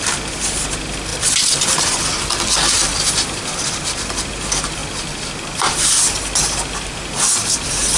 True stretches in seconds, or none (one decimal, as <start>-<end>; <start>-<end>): 0.0-1.1; 3.1-8.0